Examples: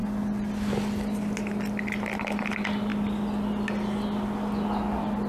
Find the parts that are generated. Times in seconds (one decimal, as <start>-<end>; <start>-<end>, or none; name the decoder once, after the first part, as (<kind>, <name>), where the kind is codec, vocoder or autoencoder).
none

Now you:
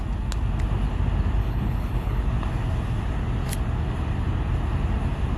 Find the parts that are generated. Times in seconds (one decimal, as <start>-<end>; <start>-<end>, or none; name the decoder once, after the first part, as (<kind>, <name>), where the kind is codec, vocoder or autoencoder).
1.4-2.2 (codec, HILCodec)

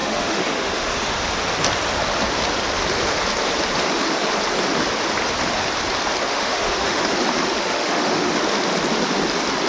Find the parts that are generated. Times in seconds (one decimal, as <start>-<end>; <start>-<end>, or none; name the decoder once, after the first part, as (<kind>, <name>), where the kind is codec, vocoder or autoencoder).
0.0-1.3 (autoencoder, DAC-VAE); 6.3-7.0; 7.6-8.3

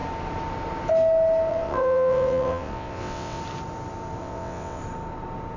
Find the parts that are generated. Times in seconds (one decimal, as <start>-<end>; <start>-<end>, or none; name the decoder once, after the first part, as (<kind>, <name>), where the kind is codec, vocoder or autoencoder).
1.5-3.4 (vocoder, WaveNeXt); 4.2-4.8